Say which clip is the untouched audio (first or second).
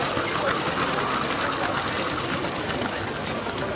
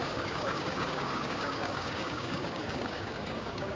first